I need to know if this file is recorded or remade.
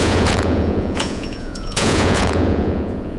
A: remade